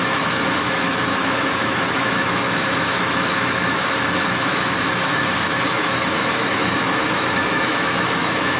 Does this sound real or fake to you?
fake